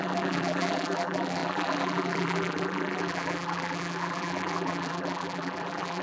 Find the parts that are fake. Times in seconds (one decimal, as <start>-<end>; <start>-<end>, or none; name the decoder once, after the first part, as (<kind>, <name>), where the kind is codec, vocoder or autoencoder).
0.0-6.0 (vocoder, BigVGAN v2)